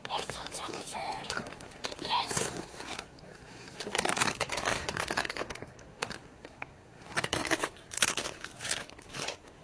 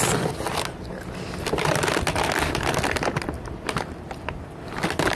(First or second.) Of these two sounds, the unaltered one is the second